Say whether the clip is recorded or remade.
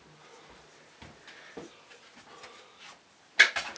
recorded